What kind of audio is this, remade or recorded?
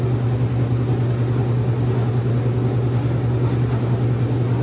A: recorded